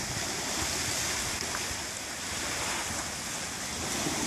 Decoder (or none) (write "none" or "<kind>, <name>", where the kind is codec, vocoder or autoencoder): none